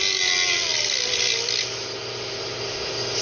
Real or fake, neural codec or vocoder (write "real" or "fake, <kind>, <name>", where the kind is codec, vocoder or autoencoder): real